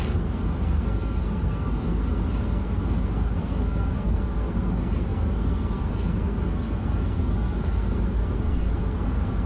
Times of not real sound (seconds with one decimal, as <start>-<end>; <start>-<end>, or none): 0.0-9.5